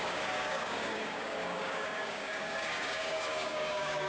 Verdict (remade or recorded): remade